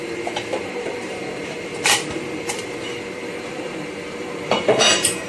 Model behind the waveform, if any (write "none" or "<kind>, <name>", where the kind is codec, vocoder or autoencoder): vocoder, BigVGAN v2